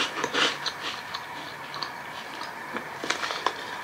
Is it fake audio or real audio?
fake